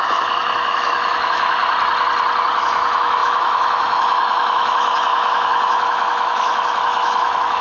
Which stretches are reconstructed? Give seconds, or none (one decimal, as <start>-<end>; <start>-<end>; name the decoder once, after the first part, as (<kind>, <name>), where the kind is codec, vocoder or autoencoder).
0.0-1.6 (autoencoder, DAC-VAE); 2.6-7.6